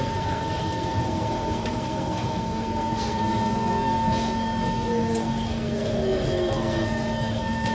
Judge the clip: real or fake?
fake